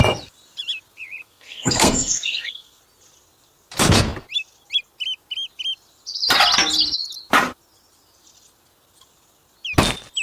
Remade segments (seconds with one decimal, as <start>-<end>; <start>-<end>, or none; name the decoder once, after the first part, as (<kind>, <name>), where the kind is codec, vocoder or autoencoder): 1.2-2.8 (codec, SNAC)